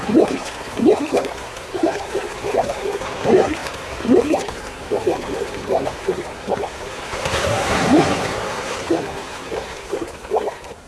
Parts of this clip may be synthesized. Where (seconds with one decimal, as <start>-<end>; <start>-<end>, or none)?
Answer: 0.0-10.9